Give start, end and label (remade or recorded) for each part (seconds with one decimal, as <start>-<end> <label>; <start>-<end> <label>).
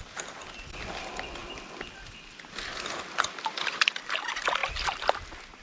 0.0-5.6 recorded